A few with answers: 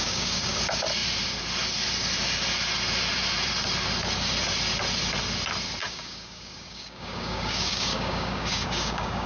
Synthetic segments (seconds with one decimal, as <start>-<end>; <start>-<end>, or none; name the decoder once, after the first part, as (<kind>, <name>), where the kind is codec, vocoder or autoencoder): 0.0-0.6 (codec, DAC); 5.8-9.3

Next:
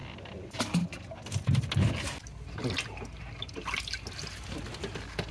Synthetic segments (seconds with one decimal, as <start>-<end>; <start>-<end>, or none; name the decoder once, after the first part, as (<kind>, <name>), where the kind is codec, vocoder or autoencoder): none

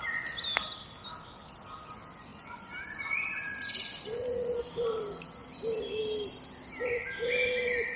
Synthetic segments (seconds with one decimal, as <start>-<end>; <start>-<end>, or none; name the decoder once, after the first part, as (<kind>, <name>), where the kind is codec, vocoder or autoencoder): 2.3-4.6 (vocoder, Vocos)

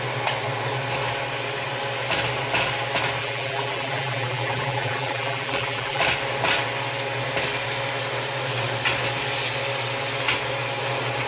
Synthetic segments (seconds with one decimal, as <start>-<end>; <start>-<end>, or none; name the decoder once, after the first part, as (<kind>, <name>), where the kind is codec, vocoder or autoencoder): 3.2-6.0 (vocoder, BigVGAN v2)